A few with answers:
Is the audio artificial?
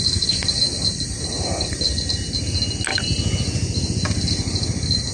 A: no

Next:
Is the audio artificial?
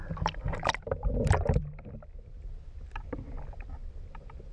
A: yes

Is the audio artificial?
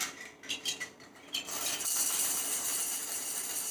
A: yes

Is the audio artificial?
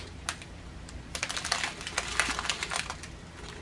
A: no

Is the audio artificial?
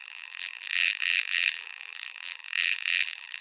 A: yes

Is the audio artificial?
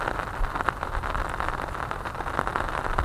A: no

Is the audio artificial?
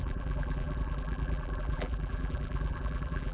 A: yes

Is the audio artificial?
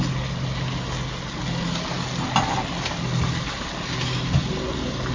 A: no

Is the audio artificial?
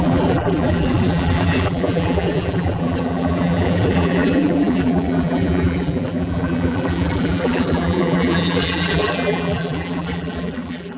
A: yes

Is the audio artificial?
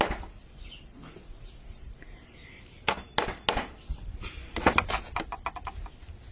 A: no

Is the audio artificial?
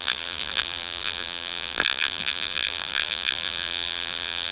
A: yes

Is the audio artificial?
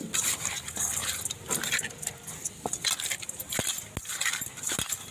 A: no